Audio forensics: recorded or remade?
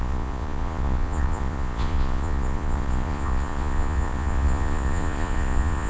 remade